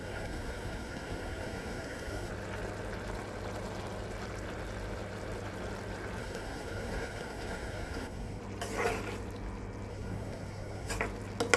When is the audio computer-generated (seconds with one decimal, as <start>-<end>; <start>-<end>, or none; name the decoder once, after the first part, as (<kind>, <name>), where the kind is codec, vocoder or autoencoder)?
0.0-2.3 (codec, SNAC); 6.2-8.4; 9.9-10.9